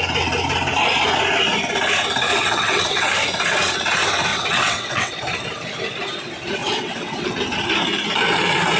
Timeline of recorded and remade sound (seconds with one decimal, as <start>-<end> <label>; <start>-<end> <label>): 0.0-2.3 recorded; 2.3-3.1 remade; 3.1-4.3 recorded; 4.3-5.2 remade; 5.2-6.6 recorded; 6.6-7.4 remade; 7.4-8.8 recorded